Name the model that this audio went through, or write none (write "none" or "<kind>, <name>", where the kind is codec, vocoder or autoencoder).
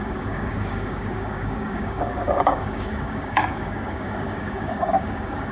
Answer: codec, DAC